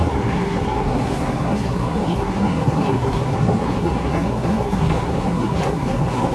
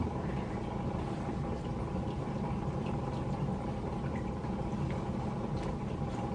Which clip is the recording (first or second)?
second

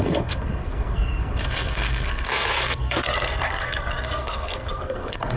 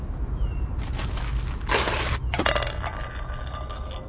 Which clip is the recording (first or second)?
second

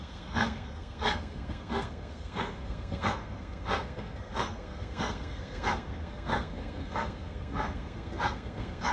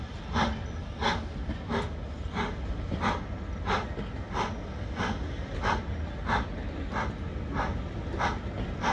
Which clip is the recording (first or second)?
second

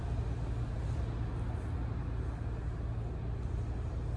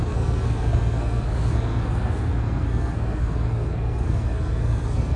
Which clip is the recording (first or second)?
first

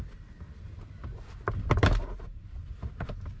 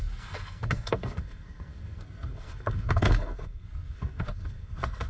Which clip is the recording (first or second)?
first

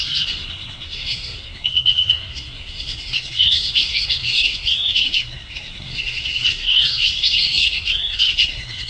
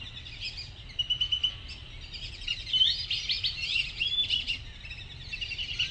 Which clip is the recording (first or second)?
second